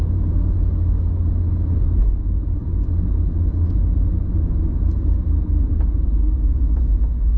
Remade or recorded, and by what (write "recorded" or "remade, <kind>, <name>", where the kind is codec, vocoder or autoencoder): recorded